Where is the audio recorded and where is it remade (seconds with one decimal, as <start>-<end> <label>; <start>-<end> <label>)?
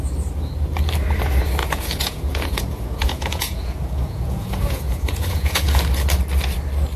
0.0-1.6 recorded; 1.6-5.8 remade; 5.8-7.0 recorded